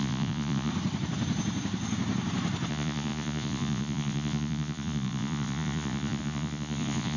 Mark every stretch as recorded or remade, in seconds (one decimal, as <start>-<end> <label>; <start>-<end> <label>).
0.0-0.7 remade; 0.7-2.7 recorded; 2.7-7.2 remade